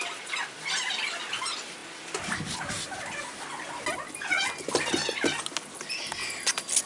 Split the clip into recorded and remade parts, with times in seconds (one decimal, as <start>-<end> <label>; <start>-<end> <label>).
0.0-6.9 recorded